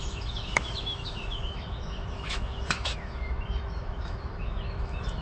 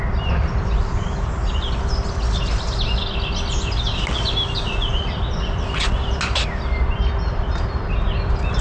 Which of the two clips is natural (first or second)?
second